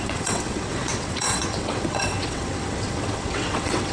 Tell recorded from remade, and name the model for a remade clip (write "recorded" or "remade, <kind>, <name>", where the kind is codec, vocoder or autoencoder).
remade, vocoder, WaveNeXt